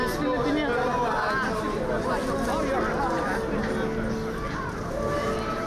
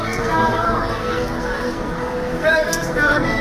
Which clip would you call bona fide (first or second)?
first